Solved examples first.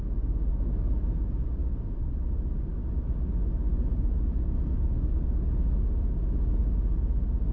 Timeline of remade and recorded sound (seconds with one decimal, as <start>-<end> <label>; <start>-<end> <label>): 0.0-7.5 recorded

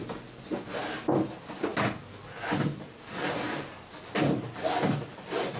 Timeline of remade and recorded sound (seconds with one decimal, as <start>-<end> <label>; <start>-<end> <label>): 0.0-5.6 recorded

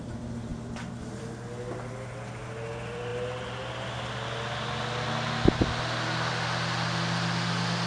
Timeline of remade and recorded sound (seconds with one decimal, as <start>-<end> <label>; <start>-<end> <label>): 0.0-7.9 recorded

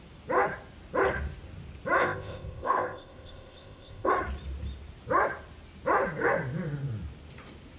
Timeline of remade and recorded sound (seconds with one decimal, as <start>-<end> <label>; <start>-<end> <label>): 0.0-2.0 recorded; 2.0-4.1 remade; 4.1-7.8 recorded

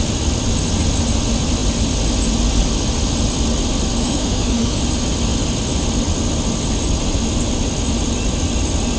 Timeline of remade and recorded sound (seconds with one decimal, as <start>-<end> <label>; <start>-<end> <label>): 0.0-4.0 recorded; 4.0-4.8 remade; 4.8-9.0 recorded

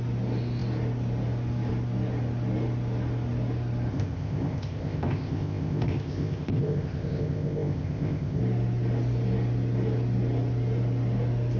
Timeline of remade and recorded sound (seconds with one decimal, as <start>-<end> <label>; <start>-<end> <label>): 0.0-3.9 recorded; 3.9-8.4 remade; 8.4-11.6 recorded